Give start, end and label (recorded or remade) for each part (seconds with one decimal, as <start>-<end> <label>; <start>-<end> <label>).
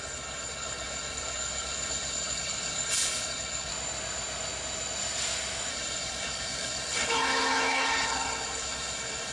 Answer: 0.0-3.7 remade; 3.7-5.7 recorded; 5.7-9.3 remade